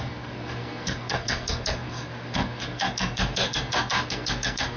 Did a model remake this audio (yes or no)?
yes